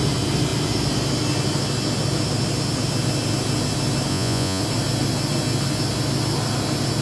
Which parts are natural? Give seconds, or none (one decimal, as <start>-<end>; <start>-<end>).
0.0-4.1; 4.6-7.0